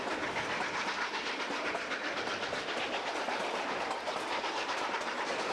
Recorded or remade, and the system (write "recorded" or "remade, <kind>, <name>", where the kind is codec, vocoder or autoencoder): recorded